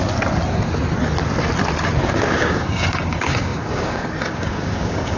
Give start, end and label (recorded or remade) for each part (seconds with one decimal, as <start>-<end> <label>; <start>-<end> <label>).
0.0-2.1 recorded; 2.1-5.2 remade